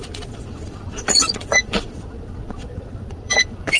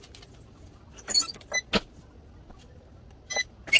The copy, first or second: first